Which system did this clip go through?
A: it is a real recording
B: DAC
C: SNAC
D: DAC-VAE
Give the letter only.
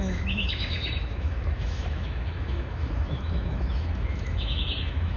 D